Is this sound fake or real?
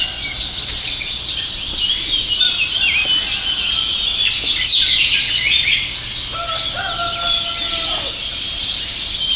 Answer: real